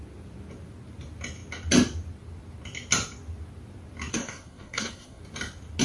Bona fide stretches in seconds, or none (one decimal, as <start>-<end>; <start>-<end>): 0.0-4.1; 5.2-5.8